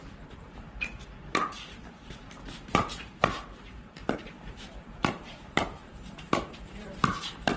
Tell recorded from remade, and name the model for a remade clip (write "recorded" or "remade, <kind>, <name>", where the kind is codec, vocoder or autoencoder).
remade, vocoder, BigVGAN v2